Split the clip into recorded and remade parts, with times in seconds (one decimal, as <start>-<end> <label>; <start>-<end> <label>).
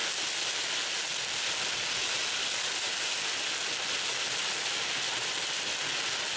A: 0.0-6.4 recorded